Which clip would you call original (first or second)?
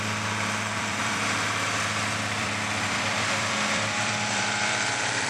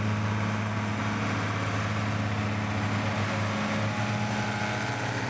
second